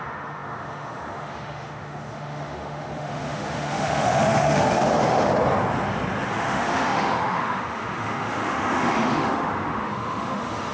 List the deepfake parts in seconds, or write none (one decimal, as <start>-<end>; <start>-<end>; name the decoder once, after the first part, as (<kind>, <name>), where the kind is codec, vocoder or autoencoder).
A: 0.0-5.3 (autoencoder, DAC-VAE); 6.3-10.7